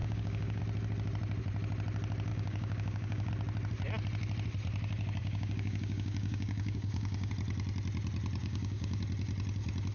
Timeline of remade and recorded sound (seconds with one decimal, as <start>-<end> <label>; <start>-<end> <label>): 0.0-0.6 remade; 0.6-2.3 recorded; 2.3-3.3 remade; 3.3-5.2 recorded; 5.2-7.3 remade; 7.3-8.4 recorded; 8.4-9.0 remade; 9.0-9.9 recorded